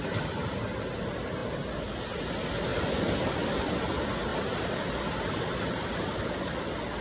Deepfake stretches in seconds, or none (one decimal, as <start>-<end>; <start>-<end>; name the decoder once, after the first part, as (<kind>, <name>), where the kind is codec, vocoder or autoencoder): 2.7-3.7 (vocoder, BigVGAN v2); 4.3-6.6